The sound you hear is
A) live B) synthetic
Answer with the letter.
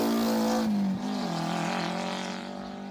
A